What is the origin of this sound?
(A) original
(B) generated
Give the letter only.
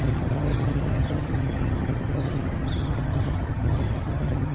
B